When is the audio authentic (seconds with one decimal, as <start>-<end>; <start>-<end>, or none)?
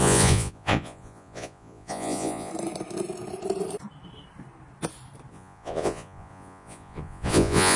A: 2.5-5.3